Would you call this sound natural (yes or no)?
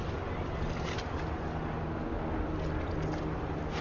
yes